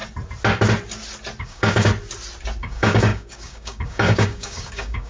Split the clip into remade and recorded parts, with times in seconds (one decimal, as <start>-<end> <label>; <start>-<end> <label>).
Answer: 0.0-1.4 recorded; 1.4-1.9 remade; 1.9-2.6 recorded; 2.6-5.1 remade